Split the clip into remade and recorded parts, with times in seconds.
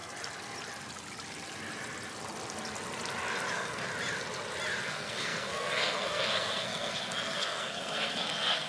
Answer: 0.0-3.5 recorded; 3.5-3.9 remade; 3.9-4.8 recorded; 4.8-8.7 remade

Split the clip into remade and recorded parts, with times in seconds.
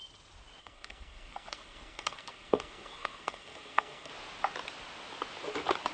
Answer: 0.0-0.6 recorded; 0.6-4.1 remade; 4.1-5.9 recorded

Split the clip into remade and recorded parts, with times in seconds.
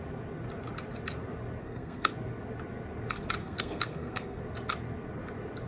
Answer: 0.0-1.6 recorded; 1.6-2.1 remade; 2.1-3.4 recorded; 3.4-4.4 remade; 4.4-5.7 recorded